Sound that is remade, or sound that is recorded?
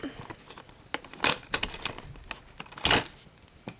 recorded